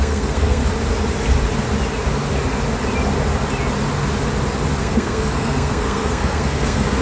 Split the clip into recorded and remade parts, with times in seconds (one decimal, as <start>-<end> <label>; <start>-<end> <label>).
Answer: 0.0-0.6 remade; 0.6-4.8 recorded; 4.8-7.0 remade